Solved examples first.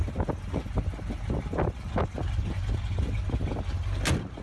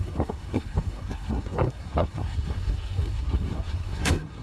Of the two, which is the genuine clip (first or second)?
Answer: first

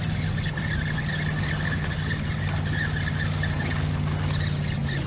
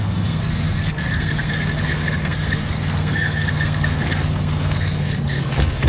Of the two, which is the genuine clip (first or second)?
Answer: first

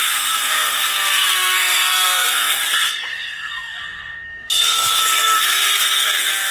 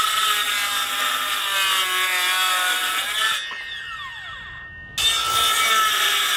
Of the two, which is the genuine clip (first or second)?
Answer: second